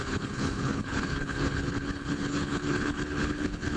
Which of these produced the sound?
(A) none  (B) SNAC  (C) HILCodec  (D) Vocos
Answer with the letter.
C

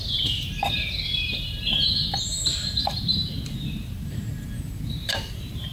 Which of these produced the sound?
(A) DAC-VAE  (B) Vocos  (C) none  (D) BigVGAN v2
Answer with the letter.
D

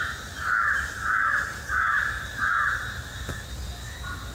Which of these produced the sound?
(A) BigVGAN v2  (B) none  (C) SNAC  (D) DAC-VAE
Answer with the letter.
A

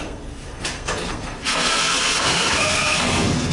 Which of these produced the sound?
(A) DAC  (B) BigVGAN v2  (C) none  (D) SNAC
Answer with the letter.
D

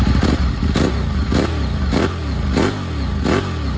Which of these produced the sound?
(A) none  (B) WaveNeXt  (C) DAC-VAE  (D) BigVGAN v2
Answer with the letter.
A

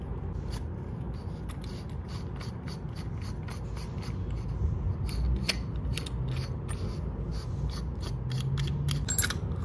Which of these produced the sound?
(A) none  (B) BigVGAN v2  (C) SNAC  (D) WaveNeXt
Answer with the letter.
A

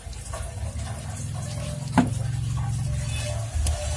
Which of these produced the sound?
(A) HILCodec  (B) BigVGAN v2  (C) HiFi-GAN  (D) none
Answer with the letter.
D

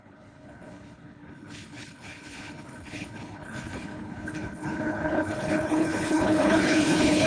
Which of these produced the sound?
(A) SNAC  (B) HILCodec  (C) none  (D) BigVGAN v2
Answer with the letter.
B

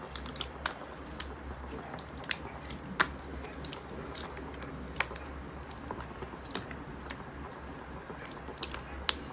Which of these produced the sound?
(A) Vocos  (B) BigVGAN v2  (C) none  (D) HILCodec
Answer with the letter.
C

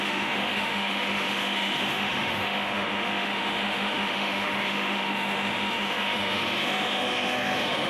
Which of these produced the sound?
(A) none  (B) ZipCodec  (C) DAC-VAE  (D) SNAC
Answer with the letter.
C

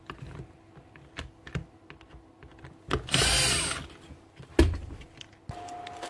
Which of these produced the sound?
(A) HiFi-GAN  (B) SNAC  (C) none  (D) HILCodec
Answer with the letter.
C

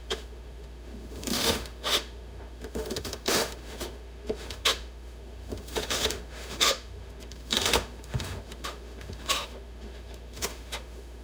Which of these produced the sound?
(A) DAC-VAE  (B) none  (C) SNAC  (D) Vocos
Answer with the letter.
A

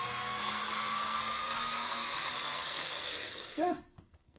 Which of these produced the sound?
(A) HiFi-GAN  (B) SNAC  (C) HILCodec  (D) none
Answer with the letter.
B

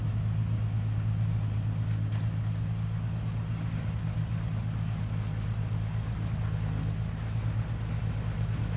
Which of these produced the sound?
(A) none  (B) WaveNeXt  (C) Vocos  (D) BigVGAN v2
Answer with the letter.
A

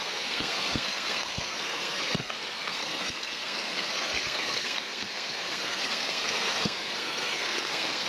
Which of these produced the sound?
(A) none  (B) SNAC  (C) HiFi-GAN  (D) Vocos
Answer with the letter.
B